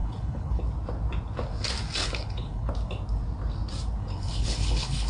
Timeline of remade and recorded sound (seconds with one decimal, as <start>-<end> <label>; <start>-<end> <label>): 0.0-0.6 remade; 0.6-2.0 recorded; 2.0-2.7 remade; 2.7-4.0 recorded; 4.0-5.1 remade